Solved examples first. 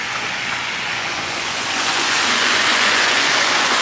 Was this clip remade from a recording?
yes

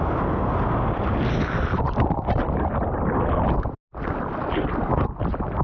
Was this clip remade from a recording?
no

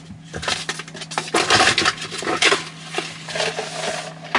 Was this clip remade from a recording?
no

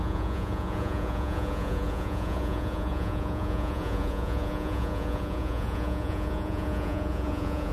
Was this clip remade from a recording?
yes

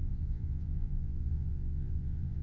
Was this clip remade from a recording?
yes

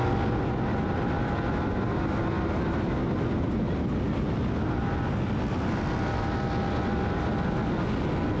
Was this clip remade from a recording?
no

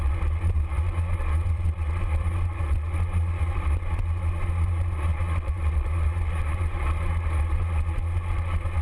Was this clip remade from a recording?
yes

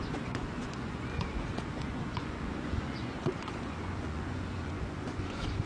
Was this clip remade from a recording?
yes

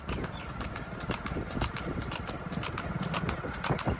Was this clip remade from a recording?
no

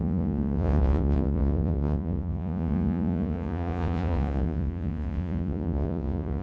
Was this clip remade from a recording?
yes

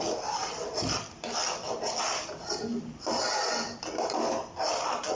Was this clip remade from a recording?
no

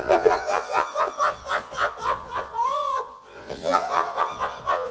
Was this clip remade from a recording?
yes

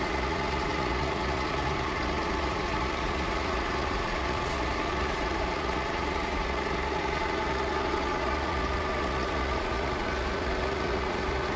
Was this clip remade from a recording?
yes